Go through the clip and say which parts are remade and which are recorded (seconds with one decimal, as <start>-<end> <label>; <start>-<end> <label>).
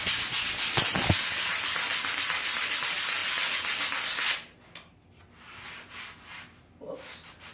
0.0-7.5 recorded